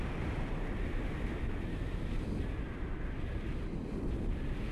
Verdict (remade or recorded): recorded